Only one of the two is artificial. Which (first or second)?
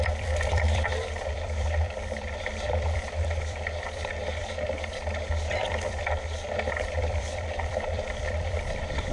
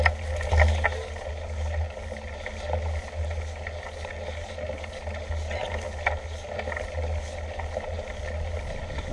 first